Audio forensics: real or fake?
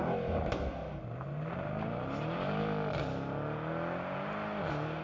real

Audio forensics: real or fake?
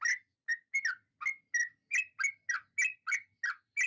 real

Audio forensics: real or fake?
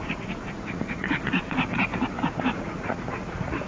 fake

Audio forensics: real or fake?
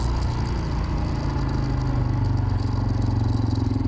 real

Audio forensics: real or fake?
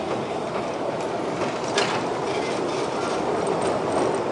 real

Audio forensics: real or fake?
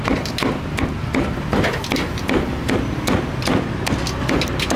real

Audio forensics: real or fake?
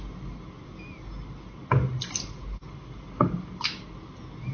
real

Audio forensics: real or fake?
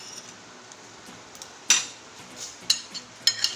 real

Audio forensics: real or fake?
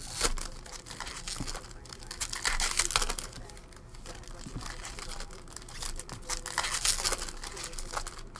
real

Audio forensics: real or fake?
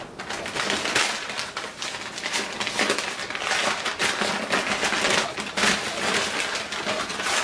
real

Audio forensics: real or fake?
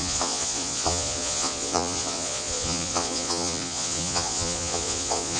fake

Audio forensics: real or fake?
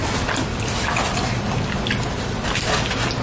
real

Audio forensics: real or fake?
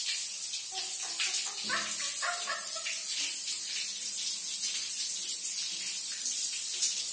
real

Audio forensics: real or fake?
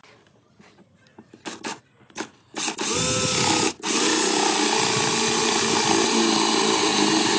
real